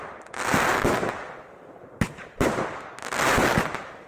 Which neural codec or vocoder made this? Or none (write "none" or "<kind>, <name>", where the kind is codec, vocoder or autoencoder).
none